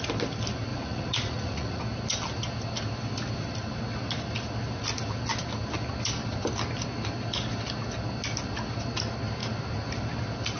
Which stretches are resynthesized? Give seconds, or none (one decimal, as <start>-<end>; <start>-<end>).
0.7-1.8